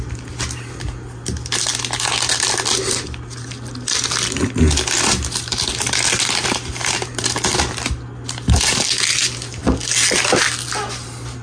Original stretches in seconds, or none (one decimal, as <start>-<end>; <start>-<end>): 0.0-11.4